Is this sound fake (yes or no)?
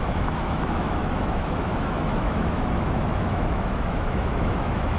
yes